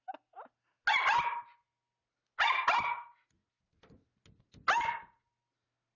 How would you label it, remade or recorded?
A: recorded